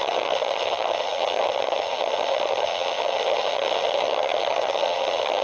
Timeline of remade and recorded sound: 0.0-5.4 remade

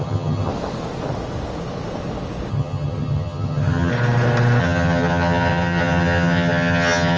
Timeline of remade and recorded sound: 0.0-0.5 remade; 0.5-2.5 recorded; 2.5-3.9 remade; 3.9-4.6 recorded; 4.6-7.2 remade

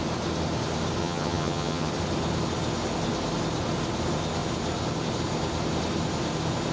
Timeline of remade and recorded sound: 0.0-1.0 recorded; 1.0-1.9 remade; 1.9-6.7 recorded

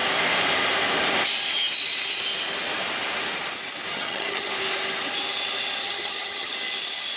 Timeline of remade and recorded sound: 0.0-3.9 recorded; 3.9-4.5 remade; 4.5-5.8 recorded; 5.8-6.5 remade; 6.5-7.2 recorded